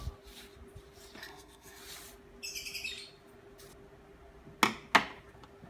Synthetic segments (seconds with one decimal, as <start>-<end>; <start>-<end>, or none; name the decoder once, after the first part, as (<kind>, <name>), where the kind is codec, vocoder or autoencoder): 1.2-1.8 (codec, SNAC)